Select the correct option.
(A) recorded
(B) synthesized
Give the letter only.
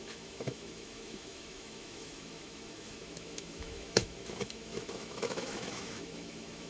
B